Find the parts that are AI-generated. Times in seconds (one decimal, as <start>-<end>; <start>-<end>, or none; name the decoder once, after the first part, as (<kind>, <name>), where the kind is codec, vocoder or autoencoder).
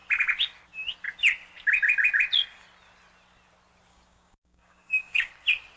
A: 3.9-5.3 (codec, DAC)